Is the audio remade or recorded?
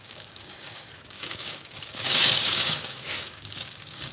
remade